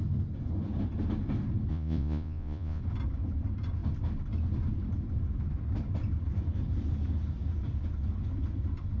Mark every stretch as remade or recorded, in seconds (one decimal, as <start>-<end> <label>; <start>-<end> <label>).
0.0-1.7 recorded; 1.7-2.8 remade; 2.8-9.0 recorded